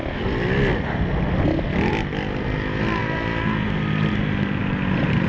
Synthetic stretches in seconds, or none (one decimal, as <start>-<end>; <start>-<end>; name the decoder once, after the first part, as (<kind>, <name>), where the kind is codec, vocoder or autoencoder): none